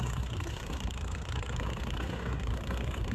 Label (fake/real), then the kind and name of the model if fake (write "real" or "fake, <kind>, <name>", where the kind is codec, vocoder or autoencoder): fake, codec, SNAC